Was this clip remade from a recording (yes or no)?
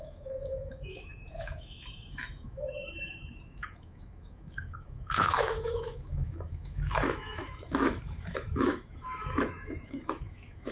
yes